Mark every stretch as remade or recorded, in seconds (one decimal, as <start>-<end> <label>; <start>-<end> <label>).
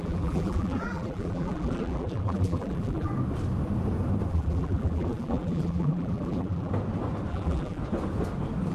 0.0-3.1 remade; 3.1-4.3 recorded; 4.3-6.7 remade; 6.7-7.3 recorded; 7.3-7.8 remade; 7.8-8.7 recorded